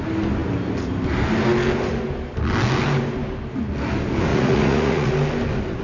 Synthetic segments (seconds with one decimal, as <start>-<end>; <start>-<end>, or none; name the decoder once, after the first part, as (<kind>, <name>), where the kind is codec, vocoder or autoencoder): 4.3-5.1 (vocoder, Vocos)